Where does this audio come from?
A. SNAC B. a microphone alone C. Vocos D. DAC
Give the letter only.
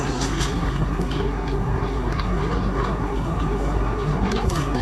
A